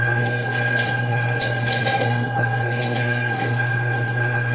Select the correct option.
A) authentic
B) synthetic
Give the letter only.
B